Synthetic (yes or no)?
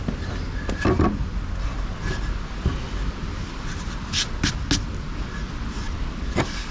no